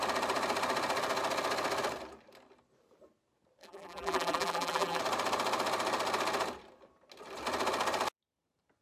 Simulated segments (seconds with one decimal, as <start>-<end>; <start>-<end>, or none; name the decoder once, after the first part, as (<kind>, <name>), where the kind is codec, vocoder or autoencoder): 3.6-5.0 (vocoder, BigVGAN v2)